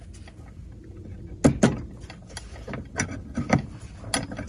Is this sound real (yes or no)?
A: yes